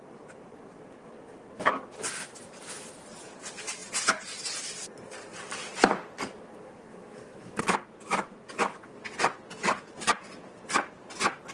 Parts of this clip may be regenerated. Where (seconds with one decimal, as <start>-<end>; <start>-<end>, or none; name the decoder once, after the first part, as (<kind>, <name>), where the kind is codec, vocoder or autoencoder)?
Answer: 6.9-7.6 (autoencoder, DAC-VAE)